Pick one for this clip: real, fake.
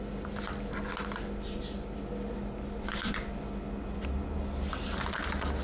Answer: real